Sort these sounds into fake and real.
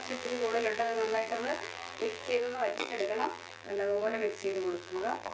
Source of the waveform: fake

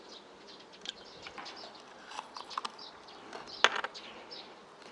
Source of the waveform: real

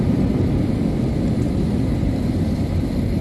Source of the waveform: fake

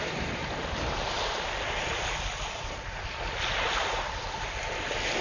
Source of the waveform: real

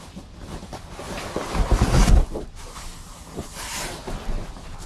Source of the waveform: real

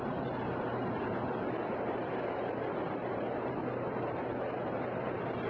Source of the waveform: fake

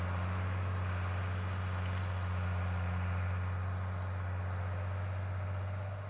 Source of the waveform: real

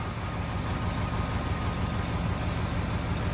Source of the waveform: real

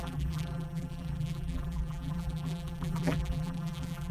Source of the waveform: fake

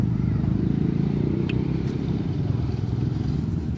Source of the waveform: fake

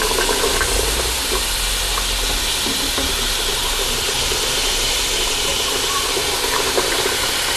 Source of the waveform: real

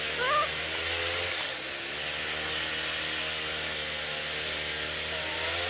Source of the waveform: real